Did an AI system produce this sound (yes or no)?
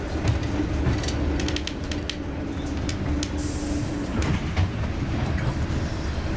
no